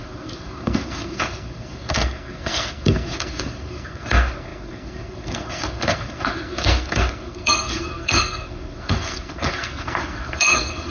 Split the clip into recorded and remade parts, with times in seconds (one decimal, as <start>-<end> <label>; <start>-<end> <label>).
0.0-10.9 remade